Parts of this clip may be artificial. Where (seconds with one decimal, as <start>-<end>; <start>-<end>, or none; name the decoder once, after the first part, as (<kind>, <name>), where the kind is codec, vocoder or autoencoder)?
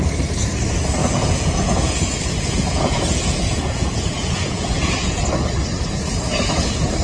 1.0-5.2 (vocoder, Vocos)